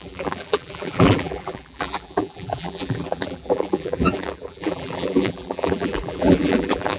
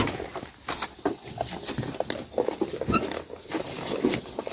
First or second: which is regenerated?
first